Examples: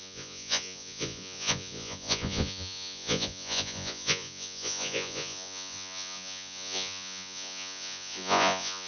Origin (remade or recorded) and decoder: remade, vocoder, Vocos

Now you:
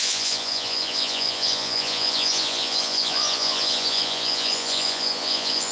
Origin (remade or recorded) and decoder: remade, vocoder, Vocos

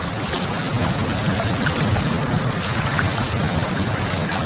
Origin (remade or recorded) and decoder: recorded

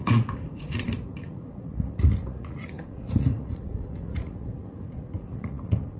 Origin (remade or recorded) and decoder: remade, vocoder, Vocos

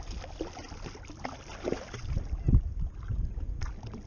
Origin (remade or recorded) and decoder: recorded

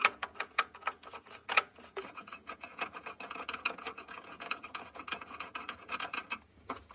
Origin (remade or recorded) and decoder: remade, vocoder, Vocos